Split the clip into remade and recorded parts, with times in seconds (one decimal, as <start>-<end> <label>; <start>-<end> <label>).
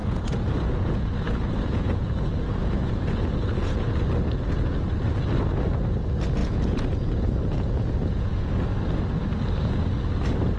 0.0-3.8 remade; 3.8-6.4 recorded; 6.4-8.5 remade; 8.5-10.6 recorded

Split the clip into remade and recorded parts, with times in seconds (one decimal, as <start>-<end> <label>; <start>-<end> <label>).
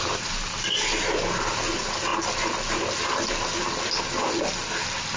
0.0-5.2 recorded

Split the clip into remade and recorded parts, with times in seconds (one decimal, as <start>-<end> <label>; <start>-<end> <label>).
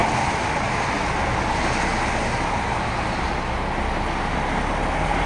0.0-5.3 recorded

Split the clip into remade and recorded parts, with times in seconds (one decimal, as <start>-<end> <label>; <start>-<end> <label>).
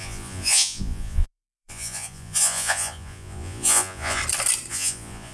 0.0-4.2 remade; 4.2-4.7 recorded; 4.7-5.3 remade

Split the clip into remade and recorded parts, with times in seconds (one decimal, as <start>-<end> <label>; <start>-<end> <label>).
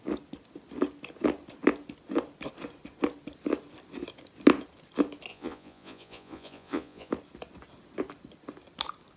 0.0-5.3 recorded; 5.3-7.1 remade; 7.1-9.2 recorded